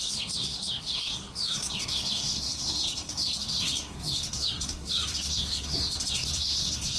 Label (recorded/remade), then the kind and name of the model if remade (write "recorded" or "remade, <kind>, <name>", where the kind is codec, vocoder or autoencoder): remade, codec, SNAC